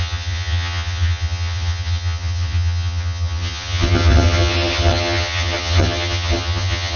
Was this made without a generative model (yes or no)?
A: no